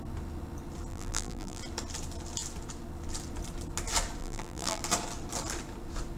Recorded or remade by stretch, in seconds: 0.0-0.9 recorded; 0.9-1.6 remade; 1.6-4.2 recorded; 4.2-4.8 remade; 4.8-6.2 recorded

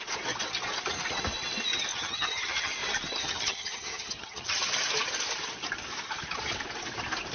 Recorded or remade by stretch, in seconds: 0.0-1.9 recorded; 1.9-2.7 remade; 2.7-3.2 recorded; 3.2-4.6 remade; 4.6-7.3 recorded

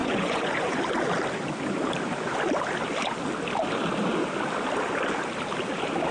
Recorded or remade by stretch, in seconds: 0.0-0.8 remade; 0.8-6.1 recorded

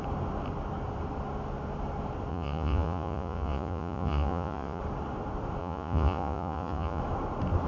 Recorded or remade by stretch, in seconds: 0.0-2.3 recorded; 2.3-4.8 remade; 4.8-5.6 recorded; 5.6-7.0 remade; 7.0-7.7 recorded

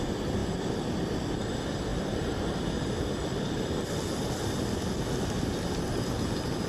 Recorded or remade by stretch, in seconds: 0.0-6.7 recorded

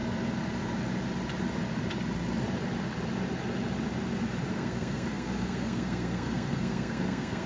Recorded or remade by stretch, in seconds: 0.0-4.5 recorded; 4.5-7.5 remade

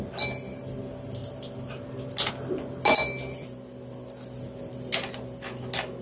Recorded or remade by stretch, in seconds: 0.0-6.0 recorded

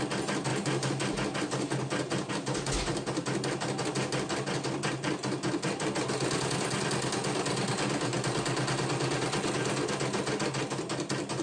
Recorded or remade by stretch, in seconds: 0.0-11.4 recorded